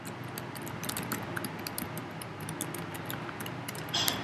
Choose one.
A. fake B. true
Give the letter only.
B